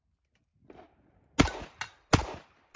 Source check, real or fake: real